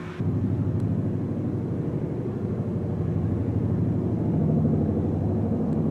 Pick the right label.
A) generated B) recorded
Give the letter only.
B